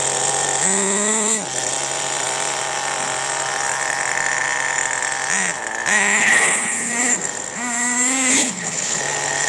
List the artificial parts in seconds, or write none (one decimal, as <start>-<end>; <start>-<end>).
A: 6.2-6.9; 8.3-9.0